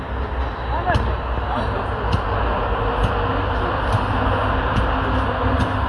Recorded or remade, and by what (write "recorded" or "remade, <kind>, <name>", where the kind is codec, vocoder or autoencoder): recorded